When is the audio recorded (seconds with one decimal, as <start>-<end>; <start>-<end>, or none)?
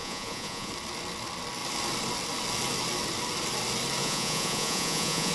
0.7-4.0